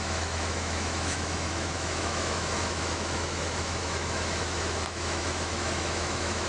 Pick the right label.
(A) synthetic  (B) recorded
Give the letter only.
A